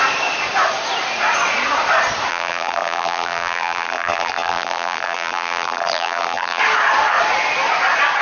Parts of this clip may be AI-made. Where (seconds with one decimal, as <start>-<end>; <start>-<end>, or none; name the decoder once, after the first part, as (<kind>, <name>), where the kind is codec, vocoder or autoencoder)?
2.3-6.6 (vocoder, BigVGAN v2)